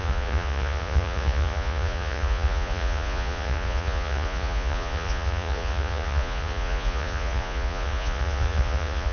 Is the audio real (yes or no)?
no